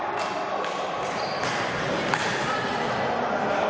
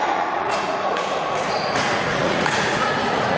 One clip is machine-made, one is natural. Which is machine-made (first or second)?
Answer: second